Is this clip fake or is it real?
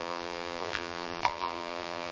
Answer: fake